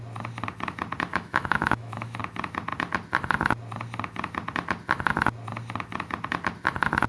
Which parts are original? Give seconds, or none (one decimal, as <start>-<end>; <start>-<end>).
0.0-1.1; 2.2-7.1

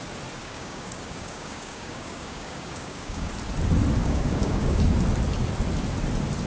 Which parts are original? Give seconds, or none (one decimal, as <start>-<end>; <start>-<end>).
0.0-0.4; 3.3-4.0; 4.8-6.5

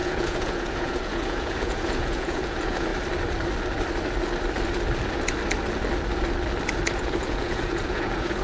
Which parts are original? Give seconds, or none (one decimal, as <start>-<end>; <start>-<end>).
2.9-7.0

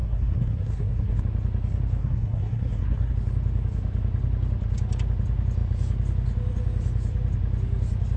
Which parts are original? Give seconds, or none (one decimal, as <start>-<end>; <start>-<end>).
1.2-2.0; 3.1-8.2

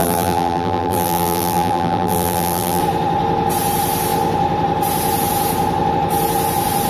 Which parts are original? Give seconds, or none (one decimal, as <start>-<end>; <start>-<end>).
2.8-6.9